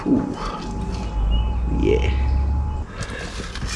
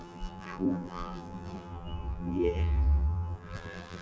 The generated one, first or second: second